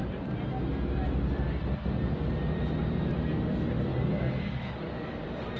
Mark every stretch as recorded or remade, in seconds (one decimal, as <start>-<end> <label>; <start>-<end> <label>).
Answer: 0.0-3.9 recorded; 3.9-5.1 remade; 5.1-5.6 recorded